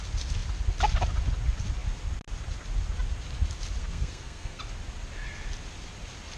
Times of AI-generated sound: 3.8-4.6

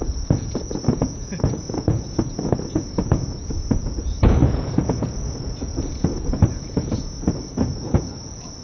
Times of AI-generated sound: 0.0-8.6

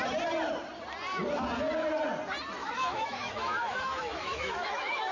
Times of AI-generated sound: 2.6-5.1

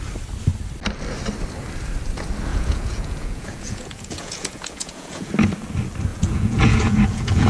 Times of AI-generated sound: 2.5-5.3; 6.1-7.5

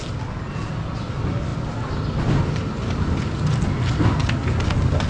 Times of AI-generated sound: none

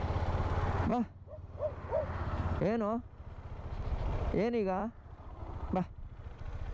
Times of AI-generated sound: none